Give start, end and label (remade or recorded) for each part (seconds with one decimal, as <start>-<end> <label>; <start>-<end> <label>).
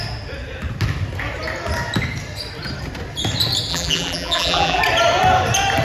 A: 0.0-3.7 recorded; 3.7-4.8 remade; 4.8-5.8 recorded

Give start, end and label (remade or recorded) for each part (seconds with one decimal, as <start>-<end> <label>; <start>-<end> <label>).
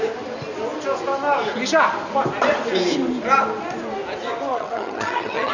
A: 0.0-4.5 recorded; 4.5-5.5 remade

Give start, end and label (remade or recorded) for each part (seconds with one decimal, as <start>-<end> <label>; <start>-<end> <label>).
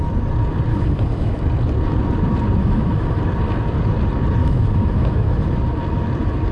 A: 0.0-0.7 recorded; 0.7-1.4 remade; 1.4-2.6 recorded; 2.6-3.2 remade; 3.2-4.4 recorded; 4.4-5.5 remade; 5.5-6.5 recorded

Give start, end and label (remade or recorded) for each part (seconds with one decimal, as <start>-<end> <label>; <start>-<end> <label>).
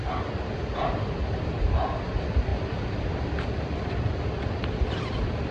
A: 0.0-5.5 recorded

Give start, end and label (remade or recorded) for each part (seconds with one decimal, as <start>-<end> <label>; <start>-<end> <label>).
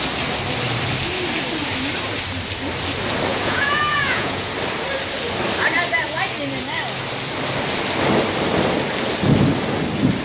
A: 0.0-3.3 recorded; 3.3-4.5 remade; 4.5-10.2 recorded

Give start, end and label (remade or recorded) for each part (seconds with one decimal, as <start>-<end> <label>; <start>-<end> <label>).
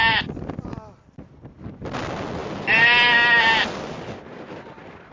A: 0.0-5.1 recorded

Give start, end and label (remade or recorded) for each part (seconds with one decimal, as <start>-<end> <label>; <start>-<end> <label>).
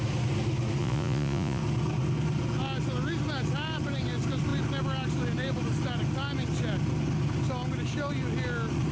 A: 0.0-0.8 recorded; 0.8-1.6 remade; 1.6-8.9 recorded